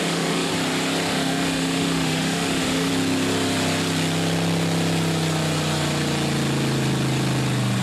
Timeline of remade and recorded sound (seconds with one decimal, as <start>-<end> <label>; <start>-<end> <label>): 0.0-0.5 remade; 0.5-1.1 recorded; 1.1-2.9 remade; 2.9-7.8 recorded